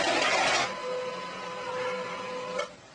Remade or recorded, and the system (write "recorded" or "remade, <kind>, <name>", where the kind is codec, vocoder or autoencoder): recorded